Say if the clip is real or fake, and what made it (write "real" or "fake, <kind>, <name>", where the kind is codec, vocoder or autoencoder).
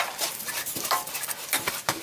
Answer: fake, vocoder, BigVGAN v2